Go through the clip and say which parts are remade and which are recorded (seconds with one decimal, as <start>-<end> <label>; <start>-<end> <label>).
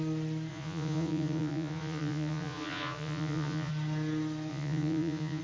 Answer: 0.0-0.5 recorded; 0.5-3.7 remade; 3.7-4.5 recorded; 4.5-5.4 remade